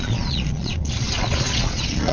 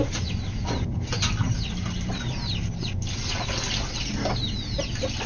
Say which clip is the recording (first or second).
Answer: second